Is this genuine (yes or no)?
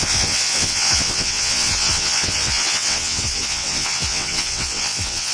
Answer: no